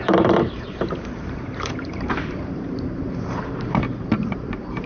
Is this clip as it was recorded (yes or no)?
no